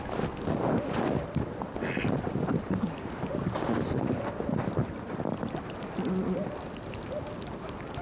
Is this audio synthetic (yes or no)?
yes